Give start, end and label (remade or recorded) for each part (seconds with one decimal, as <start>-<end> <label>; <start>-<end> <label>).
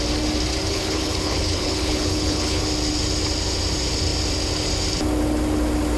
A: 0.0-0.7 recorded; 0.7-2.6 remade; 2.6-6.0 recorded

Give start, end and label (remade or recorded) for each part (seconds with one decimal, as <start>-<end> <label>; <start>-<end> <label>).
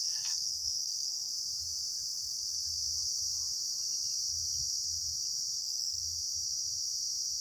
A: 0.0-1.3 remade; 1.3-5.6 recorded; 5.6-6.0 remade; 6.0-7.4 recorded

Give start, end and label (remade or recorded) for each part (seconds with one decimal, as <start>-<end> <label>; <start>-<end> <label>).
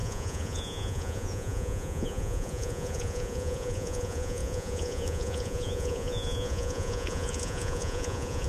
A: 0.0-8.5 remade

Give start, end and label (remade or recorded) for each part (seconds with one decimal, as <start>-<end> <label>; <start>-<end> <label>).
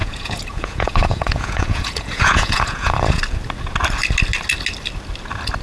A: 0.0-3.2 remade; 3.2-5.6 recorded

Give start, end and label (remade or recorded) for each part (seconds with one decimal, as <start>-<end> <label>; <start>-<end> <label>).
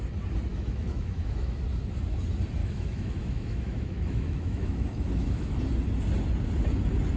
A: 0.0-0.5 recorded; 0.5-1.6 remade; 1.6-2.6 recorded; 2.6-5.6 remade; 5.6-7.2 recorded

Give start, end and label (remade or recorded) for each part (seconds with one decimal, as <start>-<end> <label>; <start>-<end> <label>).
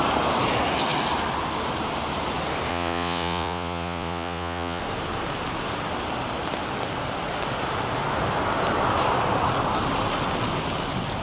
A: 0.0-2.7 recorded; 2.7-4.8 remade; 4.8-11.2 recorded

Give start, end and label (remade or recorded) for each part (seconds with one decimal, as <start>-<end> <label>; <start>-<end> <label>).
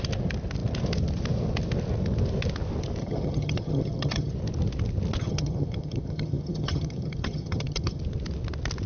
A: 0.0-3.0 recorded; 3.0-4.3 remade; 4.3-5.2 recorded; 5.2-8.0 remade; 8.0-8.9 recorded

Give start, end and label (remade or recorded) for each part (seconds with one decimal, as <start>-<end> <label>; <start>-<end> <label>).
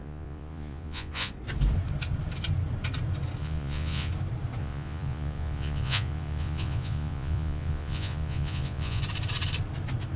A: 0.0-1.3 remade; 1.3-3.4 recorded; 3.4-4.1 remade; 4.1-4.6 recorded; 4.6-9.0 remade; 9.0-10.2 recorded